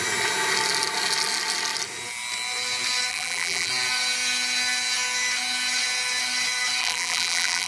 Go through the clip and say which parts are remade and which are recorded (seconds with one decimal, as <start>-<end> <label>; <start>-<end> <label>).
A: 0.0-3.1 recorded; 3.1-3.7 remade; 3.7-6.8 recorded; 6.8-7.7 remade